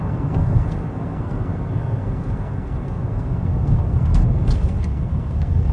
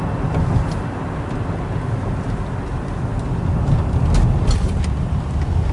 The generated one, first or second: first